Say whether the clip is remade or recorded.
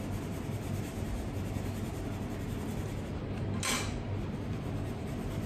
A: recorded